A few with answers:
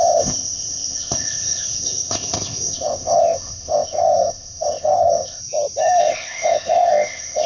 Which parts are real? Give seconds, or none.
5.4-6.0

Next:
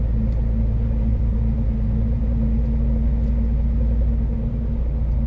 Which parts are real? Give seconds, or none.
0.0-1.1; 2.3-5.3

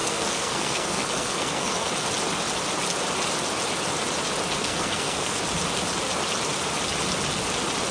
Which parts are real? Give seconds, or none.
1.9-4.6; 5.4-7.9

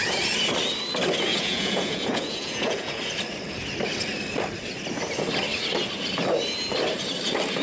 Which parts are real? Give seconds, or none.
0.0-1.3; 3.0-7.6

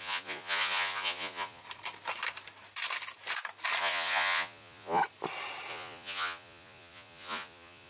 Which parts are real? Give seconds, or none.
1.6-3.8; 5.0-5.7

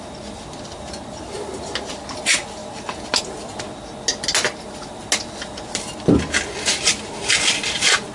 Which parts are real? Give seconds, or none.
0.0-8.1